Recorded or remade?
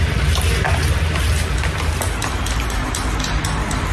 recorded